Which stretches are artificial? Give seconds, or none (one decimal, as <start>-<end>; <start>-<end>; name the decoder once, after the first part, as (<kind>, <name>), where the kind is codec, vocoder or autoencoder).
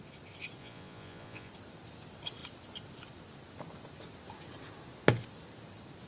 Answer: 0.6-1.5 (vocoder, Vocos)